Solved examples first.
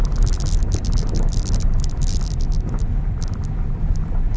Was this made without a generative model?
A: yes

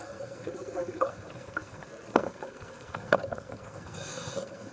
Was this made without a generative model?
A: no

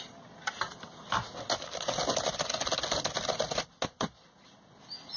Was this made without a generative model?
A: yes